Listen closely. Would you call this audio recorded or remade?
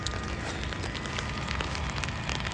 recorded